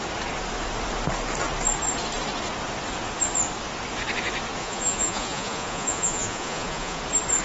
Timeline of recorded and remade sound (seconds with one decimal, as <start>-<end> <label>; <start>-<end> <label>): 0.0-4.6 recorded; 4.6-7.0 remade; 7.0-7.4 recorded